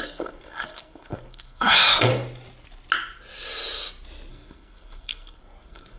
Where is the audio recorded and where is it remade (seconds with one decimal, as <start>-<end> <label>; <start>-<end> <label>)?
0.0-2.1 remade; 2.1-4.3 recorded; 4.3-6.0 remade